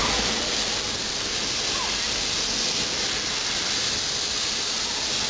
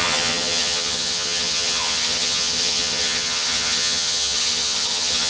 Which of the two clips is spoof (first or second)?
second